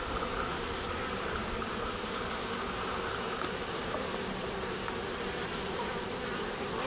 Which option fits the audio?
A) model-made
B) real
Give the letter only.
B